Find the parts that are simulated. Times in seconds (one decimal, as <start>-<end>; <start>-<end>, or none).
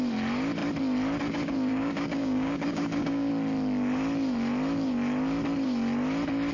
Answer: 1.7-3.3